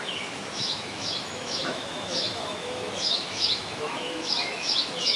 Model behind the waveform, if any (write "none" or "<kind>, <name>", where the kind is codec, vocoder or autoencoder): autoencoder, DAC-VAE